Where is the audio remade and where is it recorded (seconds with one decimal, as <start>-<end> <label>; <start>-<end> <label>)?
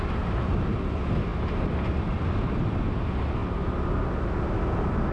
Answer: 0.0-5.1 recorded